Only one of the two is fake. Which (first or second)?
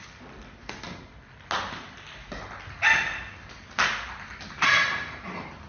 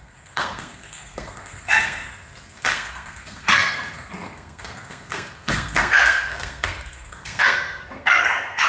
second